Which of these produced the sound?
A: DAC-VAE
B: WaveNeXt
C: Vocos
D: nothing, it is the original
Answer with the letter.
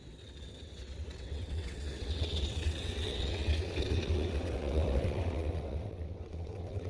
B